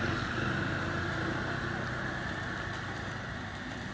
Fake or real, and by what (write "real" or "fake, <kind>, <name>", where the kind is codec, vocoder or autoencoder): real